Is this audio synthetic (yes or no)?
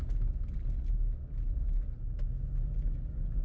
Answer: no